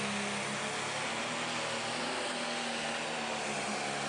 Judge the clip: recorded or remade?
recorded